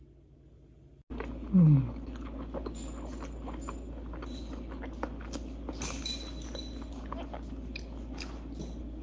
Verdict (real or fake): real